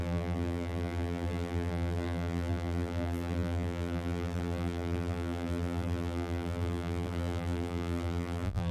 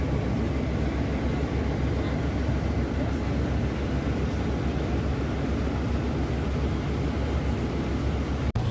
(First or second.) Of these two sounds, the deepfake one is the first